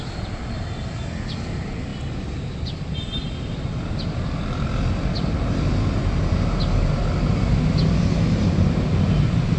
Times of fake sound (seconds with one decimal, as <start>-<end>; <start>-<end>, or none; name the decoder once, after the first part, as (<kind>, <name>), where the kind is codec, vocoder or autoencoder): none